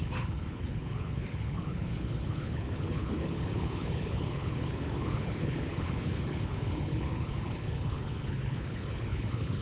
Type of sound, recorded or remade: remade